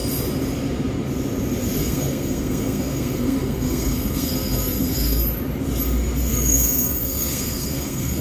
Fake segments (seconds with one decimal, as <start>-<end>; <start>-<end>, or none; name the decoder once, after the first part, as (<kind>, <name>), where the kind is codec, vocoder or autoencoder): 1.8-5.2 (codec, SNAC); 6.3-8.2